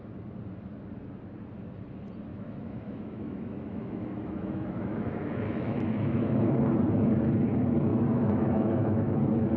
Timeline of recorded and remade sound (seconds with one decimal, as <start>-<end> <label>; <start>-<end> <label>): 0.0-2.3 recorded; 2.3-6.5 remade; 6.5-7.9 recorded; 7.9-9.2 remade; 9.2-9.6 recorded